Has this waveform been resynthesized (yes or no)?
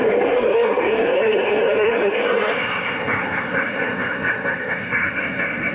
yes